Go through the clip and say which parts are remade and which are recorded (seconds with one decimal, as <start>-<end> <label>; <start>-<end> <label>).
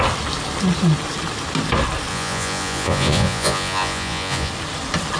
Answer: 0.0-2.1 recorded; 2.1-4.5 remade; 4.5-5.2 recorded